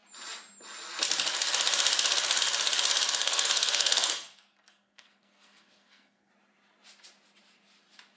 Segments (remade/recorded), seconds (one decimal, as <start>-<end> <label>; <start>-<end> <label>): 0.0-3.2 recorded; 3.2-6.3 remade; 6.3-8.2 recorded